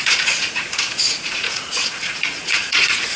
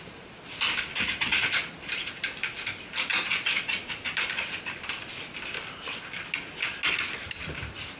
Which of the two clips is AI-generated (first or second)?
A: first